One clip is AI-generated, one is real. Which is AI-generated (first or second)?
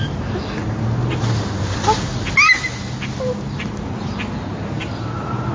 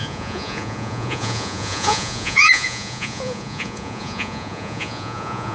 second